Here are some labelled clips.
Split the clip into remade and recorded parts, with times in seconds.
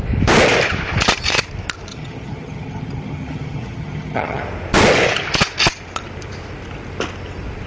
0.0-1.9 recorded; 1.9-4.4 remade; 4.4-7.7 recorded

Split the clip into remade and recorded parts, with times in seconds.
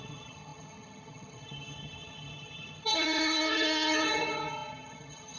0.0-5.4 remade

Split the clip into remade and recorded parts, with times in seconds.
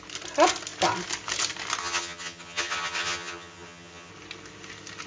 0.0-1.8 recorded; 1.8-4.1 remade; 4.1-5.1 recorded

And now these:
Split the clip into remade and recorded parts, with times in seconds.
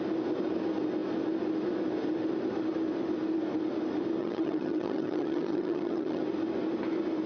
0.0-4.2 recorded; 4.2-6.2 remade; 6.2-7.3 recorded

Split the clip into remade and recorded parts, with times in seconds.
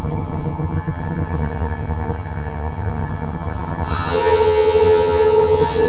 0.0-5.9 remade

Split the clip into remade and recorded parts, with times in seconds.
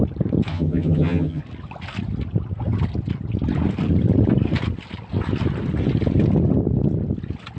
0.0-0.5 recorded; 0.5-1.4 remade; 1.4-7.6 recorded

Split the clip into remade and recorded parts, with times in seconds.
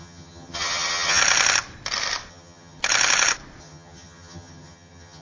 0.0-1.2 remade; 1.2-2.3 recorded; 2.3-2.8 remade; 2.8-3.6 recorded; 3.6-5.2 remade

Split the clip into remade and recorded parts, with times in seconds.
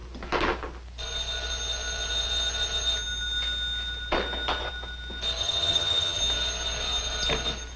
0.0-5.4 recorded; 5.4-6.2 remade; 6.2-7.8 recorded